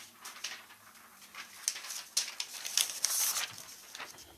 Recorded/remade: recorded